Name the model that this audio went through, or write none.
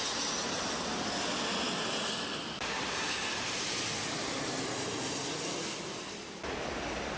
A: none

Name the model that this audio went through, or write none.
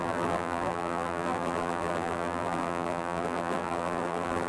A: vocoder, BigVGAN v2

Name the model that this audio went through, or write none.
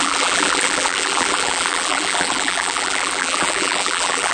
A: vocoder, BigVGAN v2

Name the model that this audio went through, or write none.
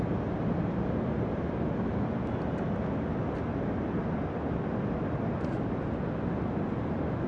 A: none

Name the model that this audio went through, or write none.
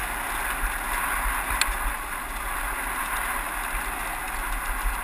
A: none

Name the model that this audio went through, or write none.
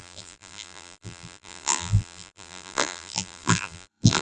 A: vocoder, BigVGAN v2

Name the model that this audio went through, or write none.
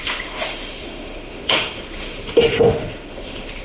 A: autoencoder, DAC-VAE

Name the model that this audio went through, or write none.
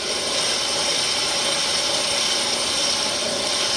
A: none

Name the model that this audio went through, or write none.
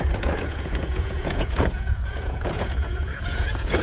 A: vocoder, Vocos